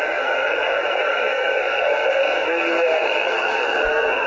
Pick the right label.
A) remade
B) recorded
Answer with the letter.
A